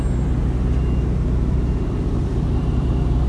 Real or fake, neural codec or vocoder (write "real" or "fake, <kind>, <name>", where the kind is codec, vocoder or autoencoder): real